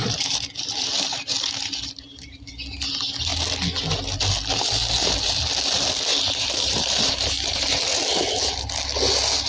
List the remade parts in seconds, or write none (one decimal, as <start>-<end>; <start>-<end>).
0.0-2.5; 6.1-8.0